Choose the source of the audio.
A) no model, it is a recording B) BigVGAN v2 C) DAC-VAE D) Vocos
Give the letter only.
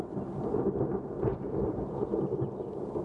B